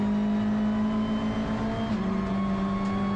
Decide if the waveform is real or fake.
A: real